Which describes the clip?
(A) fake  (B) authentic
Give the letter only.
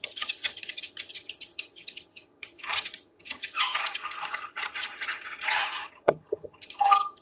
A